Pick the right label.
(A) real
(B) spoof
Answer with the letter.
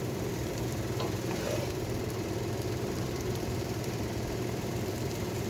B